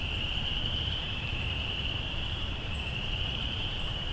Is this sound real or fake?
fake